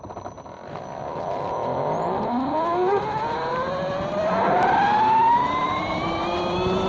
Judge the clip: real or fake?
real